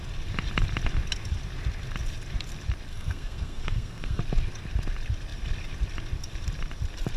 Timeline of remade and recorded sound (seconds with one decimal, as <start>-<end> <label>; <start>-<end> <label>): 0.0-2.9 recorded; 2.9-4.2 remade; 4.2-7.2 recorded